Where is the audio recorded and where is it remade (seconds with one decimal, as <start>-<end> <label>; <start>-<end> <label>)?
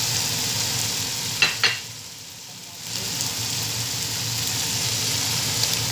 0.0-5.9 recorded